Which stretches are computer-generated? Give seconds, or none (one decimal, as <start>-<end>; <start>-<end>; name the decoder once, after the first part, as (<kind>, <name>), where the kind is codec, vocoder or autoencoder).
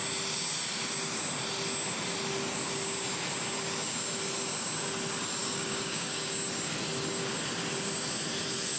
5.4-6.3 (codec, DAC)